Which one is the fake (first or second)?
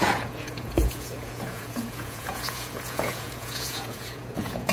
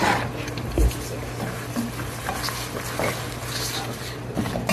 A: first